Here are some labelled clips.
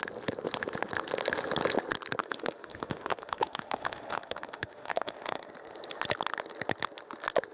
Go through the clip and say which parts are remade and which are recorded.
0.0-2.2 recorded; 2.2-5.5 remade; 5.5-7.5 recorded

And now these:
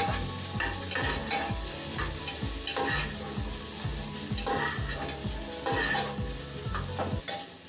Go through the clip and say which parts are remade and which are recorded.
0.0-1.2 recorded; 1.2-2.0 remade; 2.0-7.7 recorded

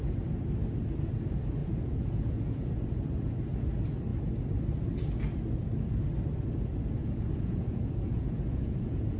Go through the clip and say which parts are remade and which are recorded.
0.0-1.6 recorded; 1.6-2.8 remade; 2.8-7.0 recorded; 7.0-9.2 remade

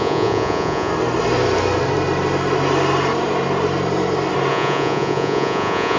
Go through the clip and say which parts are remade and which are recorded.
0.0-0.9 remade; 0.9-4.5 recorded; 4.5-6.0 remade

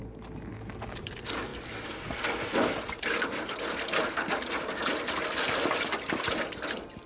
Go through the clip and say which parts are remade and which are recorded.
0.0-7.1 recorded

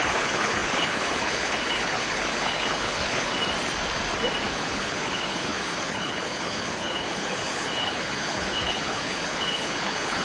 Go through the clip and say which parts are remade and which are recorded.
0.0-3.3 remade; 3.3-4.5 recorded; 4.5-10.2 remade